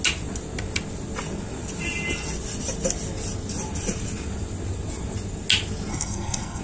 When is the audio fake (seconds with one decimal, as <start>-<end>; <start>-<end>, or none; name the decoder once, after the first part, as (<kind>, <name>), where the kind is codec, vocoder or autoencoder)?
5.9-6.6 (codec, SNAC)